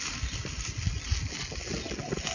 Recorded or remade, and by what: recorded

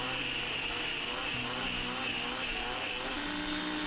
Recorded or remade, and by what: recorded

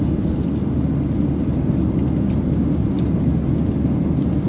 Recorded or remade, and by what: recorded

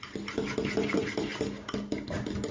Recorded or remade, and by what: recorded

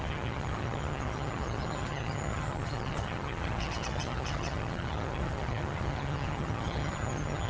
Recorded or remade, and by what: remade, vocoder, HiFi-GAN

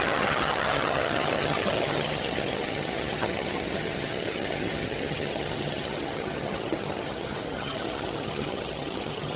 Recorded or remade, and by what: remade, vocoder, HiFi-GAN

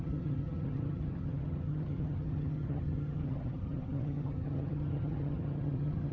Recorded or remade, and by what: remade, vocoder, HiFi-GAN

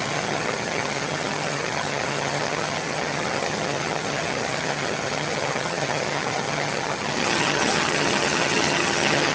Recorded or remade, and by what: remade, vocoder, HiFi-GAN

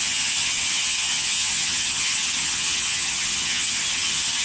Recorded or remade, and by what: remade, vocoder, HiFi-GAN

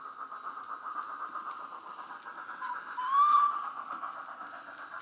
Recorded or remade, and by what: recorded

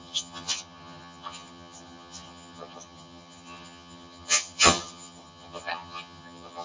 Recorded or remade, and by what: remade, vocoder, HiFi-GAN